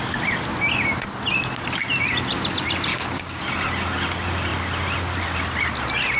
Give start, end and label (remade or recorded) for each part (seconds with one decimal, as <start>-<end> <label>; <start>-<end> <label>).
0.0-2.9 recorded; 2.9-3.4 remade; 3.4-6.2 recorded